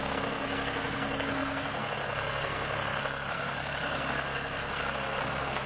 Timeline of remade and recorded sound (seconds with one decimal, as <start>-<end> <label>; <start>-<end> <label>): 0.0-5.7 remade